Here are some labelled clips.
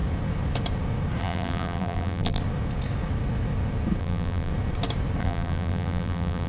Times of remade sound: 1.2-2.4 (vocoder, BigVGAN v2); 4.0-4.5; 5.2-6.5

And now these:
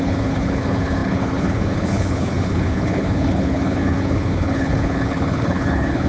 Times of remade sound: 0.0-6.1 (codec, HILCodec)

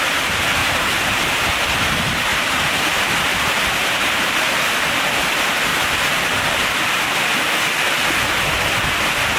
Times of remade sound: 0.6-1.3 (vocoder, BigVGAN v2); 2.3-3.6; 5.7-6.7

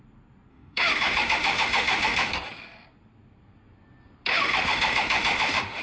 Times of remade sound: 0.5-2.3 (autoencoder, DAC-VAE); 4.3-5.8

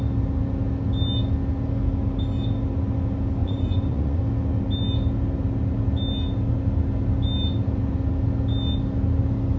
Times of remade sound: 3.4-4.2 (vocoder, Vocos)

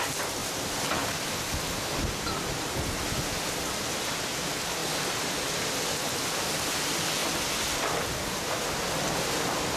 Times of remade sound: none

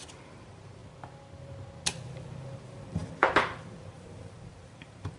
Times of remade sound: 0.0-0.8 (vocoder, BigVGAN v2); 2.4-5.2

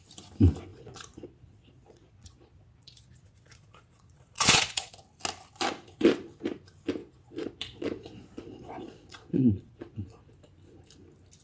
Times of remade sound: 0.7-4.9 (vocoder, Vocos); 7.0-10.4